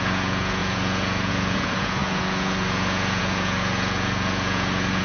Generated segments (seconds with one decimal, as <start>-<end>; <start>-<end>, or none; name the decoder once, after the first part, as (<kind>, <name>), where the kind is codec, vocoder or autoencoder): 0.0-5.0 (vocoder, Vocos)